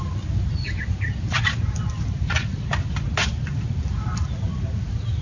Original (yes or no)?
yes